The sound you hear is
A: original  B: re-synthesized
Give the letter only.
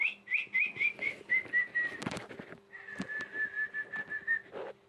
A